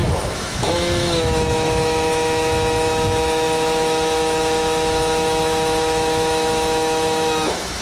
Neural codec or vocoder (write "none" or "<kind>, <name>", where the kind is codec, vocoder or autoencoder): autoencoder, DAC-VAE